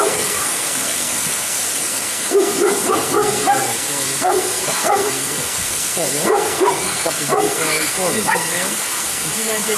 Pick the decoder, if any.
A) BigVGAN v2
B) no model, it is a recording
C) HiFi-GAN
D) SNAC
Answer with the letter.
D